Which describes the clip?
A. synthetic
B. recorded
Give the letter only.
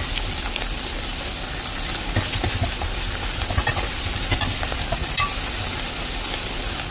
B